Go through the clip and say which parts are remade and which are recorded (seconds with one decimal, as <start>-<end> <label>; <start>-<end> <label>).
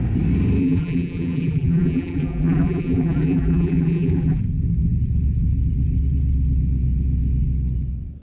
0.0-0.6 recorded; 0.6-4.4 remade; 4.4-8.2 recorded